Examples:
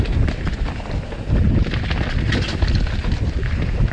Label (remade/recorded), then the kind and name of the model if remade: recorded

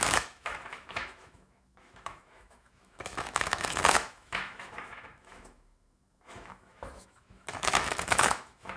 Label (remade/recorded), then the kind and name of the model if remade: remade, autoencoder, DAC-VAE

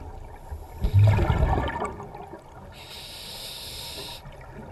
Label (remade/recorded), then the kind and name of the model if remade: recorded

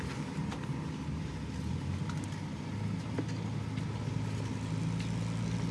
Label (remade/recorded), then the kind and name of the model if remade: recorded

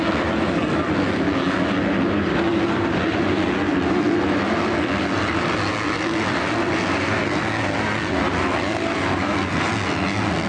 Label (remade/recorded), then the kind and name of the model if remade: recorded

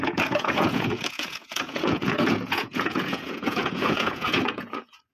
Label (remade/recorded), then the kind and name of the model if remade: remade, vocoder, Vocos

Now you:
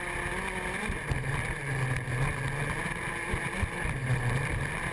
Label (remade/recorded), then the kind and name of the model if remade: recorded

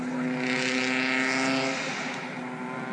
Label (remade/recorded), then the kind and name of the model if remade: recorded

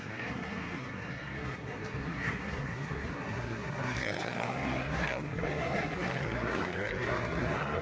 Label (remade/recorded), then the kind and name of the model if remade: remade, codec, SNAC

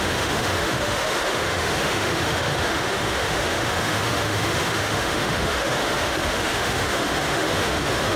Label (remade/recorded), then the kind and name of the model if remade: remade, autoencoder, DAC-VAE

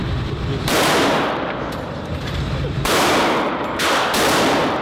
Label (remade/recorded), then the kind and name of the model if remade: remade, vocoder, BigVGAN v2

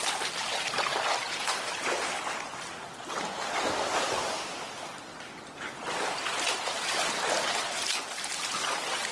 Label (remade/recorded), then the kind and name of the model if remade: recorded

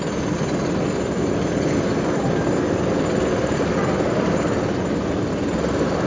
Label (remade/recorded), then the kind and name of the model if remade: recorded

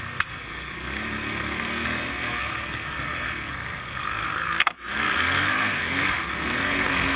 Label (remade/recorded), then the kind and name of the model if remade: remade, codec, SNAC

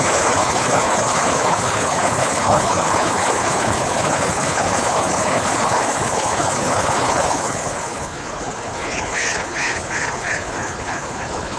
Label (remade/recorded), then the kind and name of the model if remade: remade, codec, HILCodec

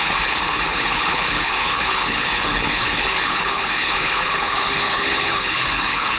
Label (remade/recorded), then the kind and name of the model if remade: remade, codec, HILCodec